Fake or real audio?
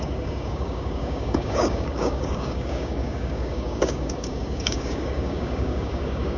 fake